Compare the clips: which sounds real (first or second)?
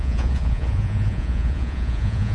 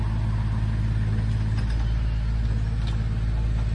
second